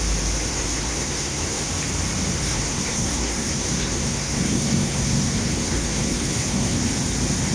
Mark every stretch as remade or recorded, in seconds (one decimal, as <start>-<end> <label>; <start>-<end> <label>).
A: 0.0-0.5 recorded; 0.5-1.6 remade; 1.6-2.3 recorded; 2.3-6.8 remade; 6.8-7.5 recorded